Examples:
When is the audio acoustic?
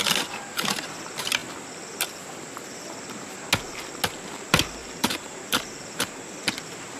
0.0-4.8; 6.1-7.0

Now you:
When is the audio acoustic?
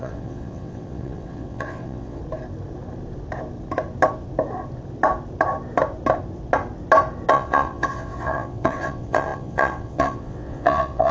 2.2-7.3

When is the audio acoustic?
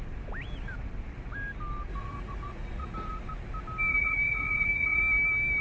0.0-1.9; 3.3-3.9; 5.0-5.6